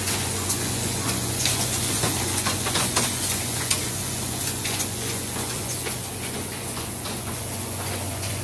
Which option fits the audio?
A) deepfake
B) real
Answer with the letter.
A